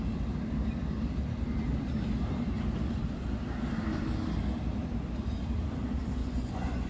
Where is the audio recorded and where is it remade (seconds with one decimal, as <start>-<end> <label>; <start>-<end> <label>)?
0.0-6.2 recorded; 6.2-6.9 remade